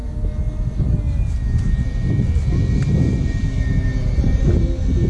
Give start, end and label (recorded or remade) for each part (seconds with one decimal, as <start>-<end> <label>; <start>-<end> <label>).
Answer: 0.0-5.1 recorded